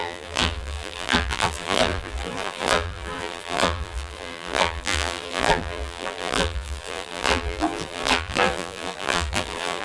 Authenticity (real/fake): fake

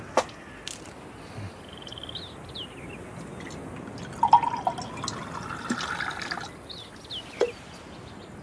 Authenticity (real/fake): real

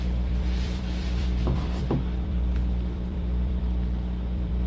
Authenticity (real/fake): fake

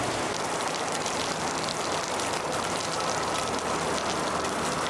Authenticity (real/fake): real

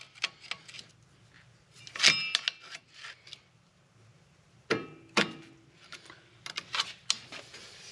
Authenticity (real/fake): real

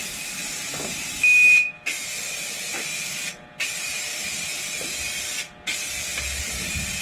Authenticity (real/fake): real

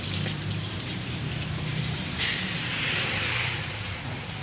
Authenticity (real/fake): fake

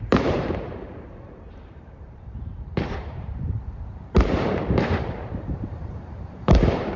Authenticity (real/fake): fake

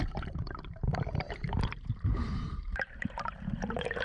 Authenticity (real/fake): fake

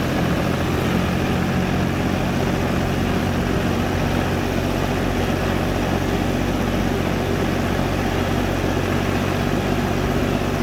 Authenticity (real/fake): real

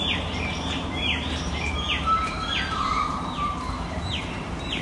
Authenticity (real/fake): fake